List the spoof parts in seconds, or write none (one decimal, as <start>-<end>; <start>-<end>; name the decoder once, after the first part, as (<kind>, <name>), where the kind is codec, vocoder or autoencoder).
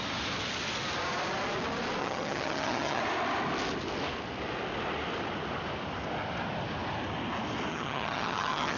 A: 2.0-3.0 (vocoder, HiFi-GAN); 7.7-8.8